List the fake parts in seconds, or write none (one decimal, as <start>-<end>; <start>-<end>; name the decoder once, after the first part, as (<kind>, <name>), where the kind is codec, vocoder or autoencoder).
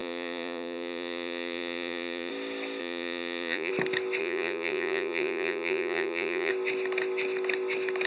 0.0-2.3 (vocoder, Vocos); 2.8-3.7; 4.2-6.5